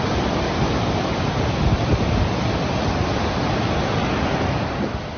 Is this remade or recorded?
recorded